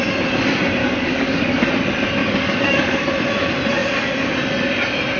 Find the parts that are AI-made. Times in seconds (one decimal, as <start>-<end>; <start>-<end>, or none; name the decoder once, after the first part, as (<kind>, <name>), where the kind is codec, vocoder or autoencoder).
0.8-1.7 (codec, DAC); 2.2-3.1